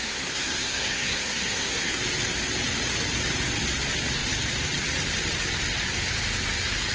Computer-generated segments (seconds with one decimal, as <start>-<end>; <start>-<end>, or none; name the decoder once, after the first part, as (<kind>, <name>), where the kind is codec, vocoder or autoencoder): 0.0-2.0 (codec, SNAC)